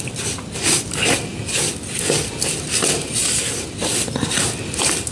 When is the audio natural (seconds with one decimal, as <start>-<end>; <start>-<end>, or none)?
0.0-5.1

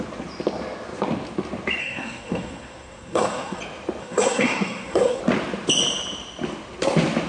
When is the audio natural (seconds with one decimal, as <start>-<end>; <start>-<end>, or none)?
0.0-1.8; 3.6-4.0; 5.2-7.3